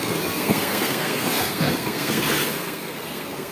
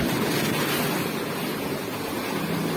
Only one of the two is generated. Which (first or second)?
first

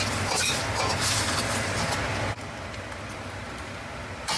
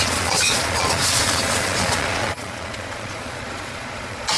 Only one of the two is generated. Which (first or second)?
second